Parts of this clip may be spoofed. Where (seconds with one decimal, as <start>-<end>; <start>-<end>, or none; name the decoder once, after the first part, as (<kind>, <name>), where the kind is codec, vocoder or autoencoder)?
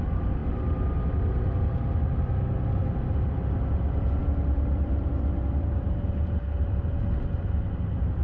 none